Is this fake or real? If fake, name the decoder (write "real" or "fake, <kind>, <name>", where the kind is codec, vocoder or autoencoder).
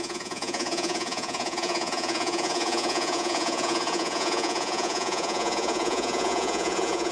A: fake, vocoder, Vocos